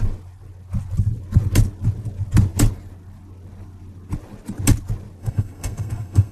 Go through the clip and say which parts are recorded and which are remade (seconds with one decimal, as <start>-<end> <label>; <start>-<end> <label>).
0.0-5.2 recorded; 5.2-6.3 remade